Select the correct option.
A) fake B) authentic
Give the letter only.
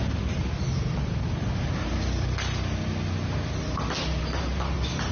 B